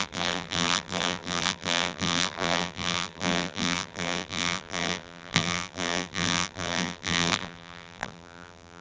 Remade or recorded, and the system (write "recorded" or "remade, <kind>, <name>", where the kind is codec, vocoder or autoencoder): remade, vocoder, BigVGAN v2